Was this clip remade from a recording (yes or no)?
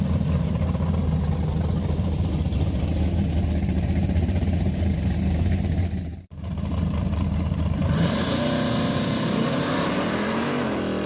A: yes